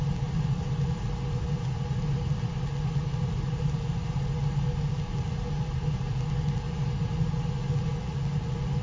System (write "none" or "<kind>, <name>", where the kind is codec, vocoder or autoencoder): none